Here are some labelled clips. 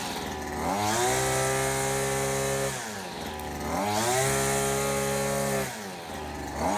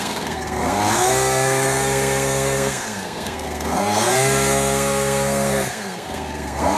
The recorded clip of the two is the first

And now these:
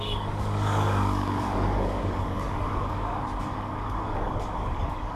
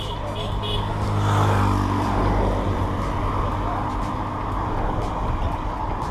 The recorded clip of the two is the second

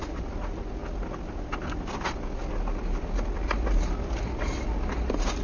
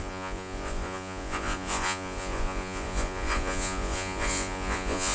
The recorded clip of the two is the first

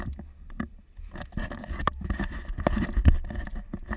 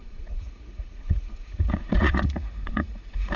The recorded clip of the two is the first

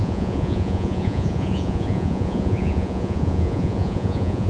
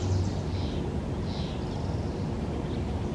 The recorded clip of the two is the second